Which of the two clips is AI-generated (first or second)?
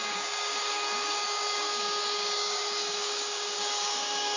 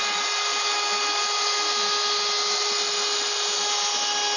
first